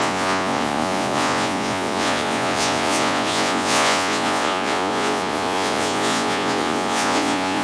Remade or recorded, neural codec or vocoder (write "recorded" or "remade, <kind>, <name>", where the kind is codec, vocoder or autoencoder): remade, vocoder, Vocos